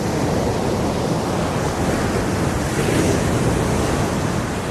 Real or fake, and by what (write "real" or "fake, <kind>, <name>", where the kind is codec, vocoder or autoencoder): real